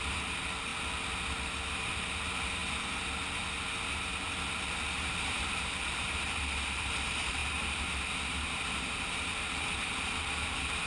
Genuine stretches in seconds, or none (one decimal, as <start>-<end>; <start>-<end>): 0.7-1.7; 2.6-4.9